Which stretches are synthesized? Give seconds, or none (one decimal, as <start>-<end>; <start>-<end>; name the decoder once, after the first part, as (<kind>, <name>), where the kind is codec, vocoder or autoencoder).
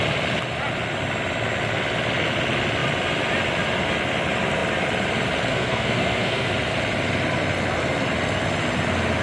5.5-6.5 (codec, SNAC)